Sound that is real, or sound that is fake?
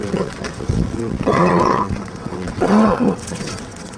fake